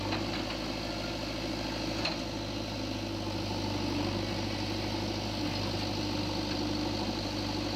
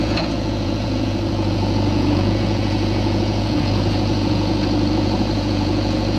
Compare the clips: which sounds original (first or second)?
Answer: first